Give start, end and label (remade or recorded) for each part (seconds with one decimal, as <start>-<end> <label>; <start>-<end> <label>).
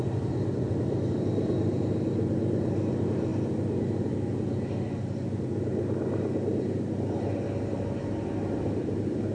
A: 0.0-9.3 recorded